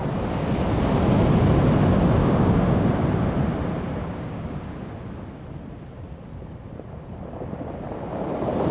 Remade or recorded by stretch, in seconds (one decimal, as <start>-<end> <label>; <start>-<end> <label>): 0.0-2.2 recorded; 2.2-2.9 remade; 2.9-4.0 recorded; 4.0-4.6 remade; 4.6-8.7 recorded